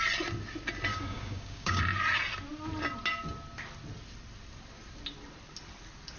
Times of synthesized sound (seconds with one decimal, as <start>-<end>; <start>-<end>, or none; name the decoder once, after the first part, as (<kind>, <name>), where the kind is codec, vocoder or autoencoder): 0.9-1.8 (codec, DAC)